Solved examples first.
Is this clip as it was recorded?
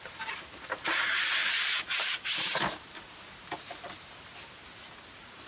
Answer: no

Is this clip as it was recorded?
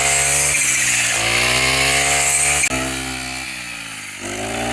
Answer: yes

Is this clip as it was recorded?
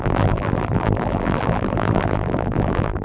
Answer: no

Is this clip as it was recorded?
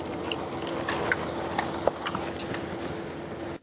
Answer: yes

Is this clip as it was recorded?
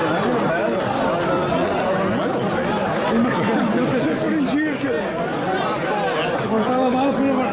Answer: yes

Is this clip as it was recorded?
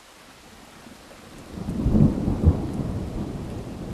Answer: yes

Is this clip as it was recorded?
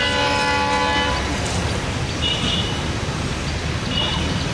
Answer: yes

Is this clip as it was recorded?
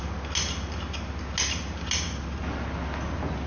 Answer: yes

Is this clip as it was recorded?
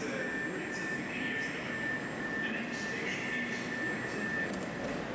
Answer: yes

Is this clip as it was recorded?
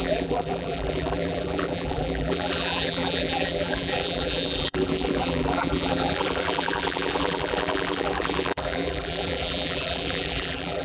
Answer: no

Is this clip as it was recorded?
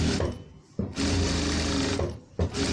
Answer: yes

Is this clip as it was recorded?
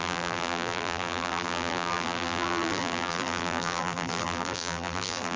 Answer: no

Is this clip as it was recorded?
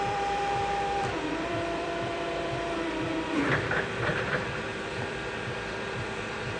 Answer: no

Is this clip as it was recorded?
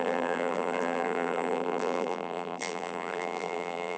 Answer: no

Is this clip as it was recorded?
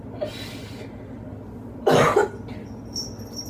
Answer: yes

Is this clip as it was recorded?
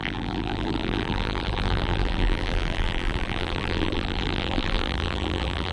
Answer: no